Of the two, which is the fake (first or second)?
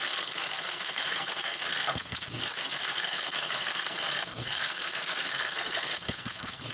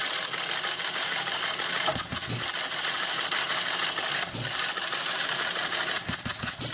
first